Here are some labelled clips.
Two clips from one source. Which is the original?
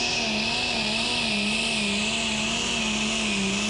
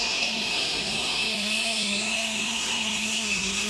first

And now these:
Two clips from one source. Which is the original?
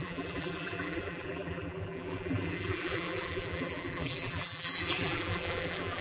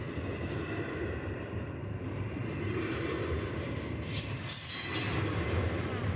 second